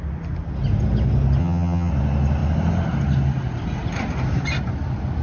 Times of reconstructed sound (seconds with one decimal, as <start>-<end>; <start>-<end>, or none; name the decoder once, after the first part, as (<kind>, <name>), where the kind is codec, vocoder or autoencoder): 1.4-1.9 (vocoder, HiFi-GAN)